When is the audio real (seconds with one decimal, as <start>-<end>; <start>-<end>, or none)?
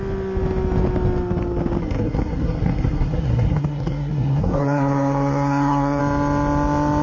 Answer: 0.0-1.8; 6.0-7.0